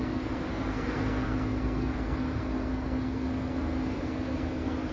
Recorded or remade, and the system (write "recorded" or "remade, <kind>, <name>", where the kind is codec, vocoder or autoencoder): remade, codec, SNAC